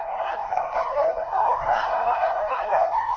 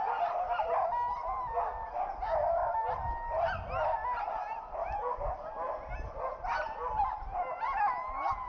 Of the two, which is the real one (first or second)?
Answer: second